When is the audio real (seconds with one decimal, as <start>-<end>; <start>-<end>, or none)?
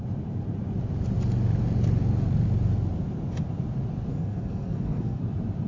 0.0-4.1; 5.2-5.7